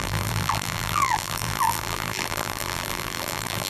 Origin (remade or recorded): remade